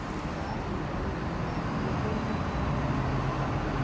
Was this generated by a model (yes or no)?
no